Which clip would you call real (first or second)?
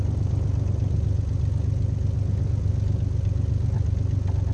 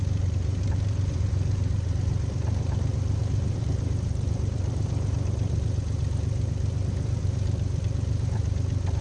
first